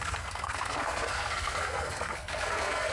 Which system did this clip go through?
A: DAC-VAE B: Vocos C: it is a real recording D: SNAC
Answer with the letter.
D